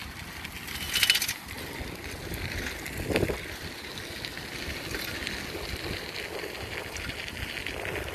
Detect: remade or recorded recorded